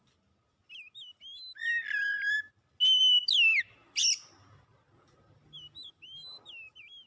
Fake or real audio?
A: real